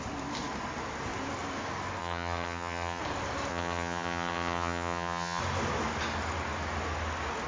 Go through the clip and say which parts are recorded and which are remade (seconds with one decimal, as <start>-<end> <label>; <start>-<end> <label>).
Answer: 0.0-2.0 recorded; 2.0-3.0 remade; 3.0-3.5 recorded; 3.5-5.4 remade; 5.4-7.5 recorded